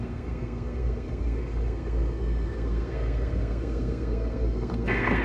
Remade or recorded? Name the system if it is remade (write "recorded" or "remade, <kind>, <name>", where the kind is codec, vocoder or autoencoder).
remade, codec, SNAC